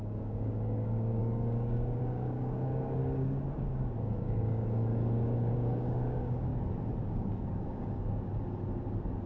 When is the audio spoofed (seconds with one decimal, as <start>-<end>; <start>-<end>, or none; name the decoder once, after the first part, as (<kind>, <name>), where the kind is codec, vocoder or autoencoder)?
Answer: 0.0-6.5 (codec, DAC); 7.0-8.3